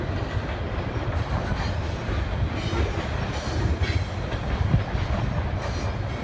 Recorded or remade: recorded